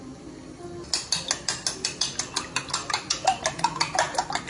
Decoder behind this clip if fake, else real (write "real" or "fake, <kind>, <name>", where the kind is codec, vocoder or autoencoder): real